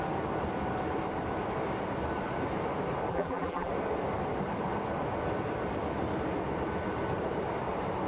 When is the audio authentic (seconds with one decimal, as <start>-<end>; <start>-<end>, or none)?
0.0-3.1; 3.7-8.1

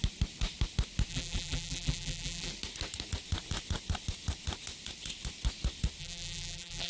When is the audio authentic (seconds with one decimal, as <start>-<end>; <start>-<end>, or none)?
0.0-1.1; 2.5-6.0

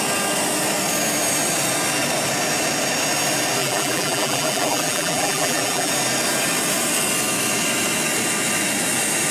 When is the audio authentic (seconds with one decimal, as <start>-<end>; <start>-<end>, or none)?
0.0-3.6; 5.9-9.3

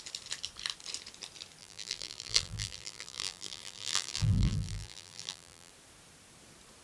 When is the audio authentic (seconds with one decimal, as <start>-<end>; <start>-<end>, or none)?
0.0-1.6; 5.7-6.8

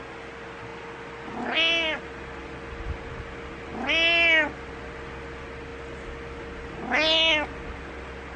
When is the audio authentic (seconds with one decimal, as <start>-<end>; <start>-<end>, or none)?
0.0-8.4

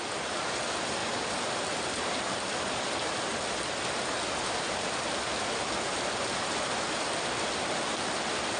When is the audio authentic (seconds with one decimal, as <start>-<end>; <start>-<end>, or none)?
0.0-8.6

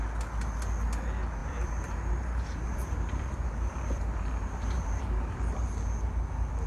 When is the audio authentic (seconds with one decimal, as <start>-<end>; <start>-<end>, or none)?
0.0-1.4; 5.4-6.7